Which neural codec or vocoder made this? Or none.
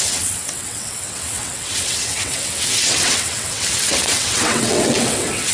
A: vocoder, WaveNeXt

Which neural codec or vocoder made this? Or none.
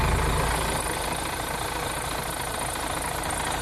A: none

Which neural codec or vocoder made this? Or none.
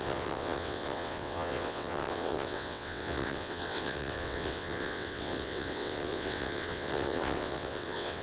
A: vocoder, WaveNeXt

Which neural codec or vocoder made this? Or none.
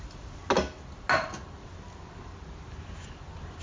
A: none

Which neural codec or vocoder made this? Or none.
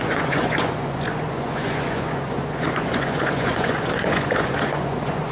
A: vocoder, Vocos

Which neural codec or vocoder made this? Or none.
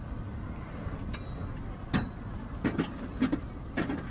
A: none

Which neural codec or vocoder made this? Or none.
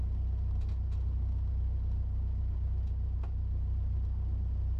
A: none